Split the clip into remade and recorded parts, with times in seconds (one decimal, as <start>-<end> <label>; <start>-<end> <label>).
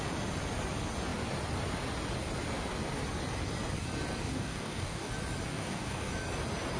0.0-4.2 recorded; 4.2-5.1 remade; 5.1-5.5 recorded; 5.5-6.1 remade; 6.1-6.8 recorded